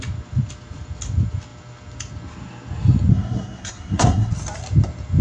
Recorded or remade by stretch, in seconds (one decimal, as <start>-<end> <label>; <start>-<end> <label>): 0.0-3.1 recorded; 3.1-4.3 remade; 4.3-5.2 recorded